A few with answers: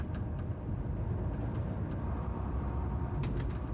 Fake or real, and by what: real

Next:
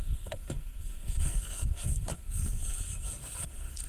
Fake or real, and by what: fake, codec, SNAC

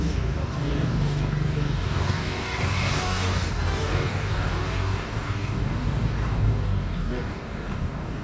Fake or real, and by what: fake, codec, DAC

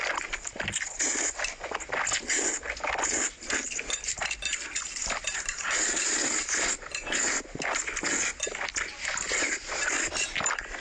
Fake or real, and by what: real